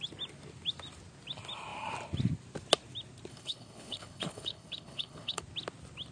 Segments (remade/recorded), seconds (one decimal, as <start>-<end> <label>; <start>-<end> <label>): 0.0-3.3 recorded; 3.3-5.4 remade; 5.4-6.1 recorded